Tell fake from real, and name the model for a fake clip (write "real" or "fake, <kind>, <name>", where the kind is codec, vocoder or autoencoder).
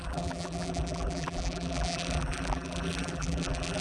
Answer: fake, vocoder, BigVGAN v2